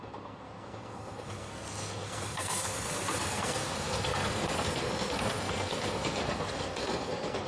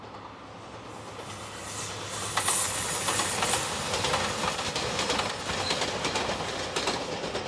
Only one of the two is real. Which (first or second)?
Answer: second